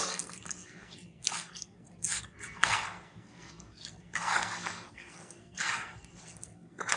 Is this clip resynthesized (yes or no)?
yes